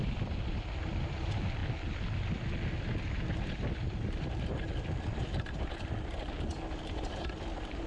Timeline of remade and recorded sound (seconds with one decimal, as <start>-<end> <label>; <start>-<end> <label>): 0.0-7.9 recorded